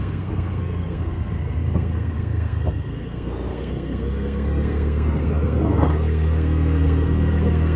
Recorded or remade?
remade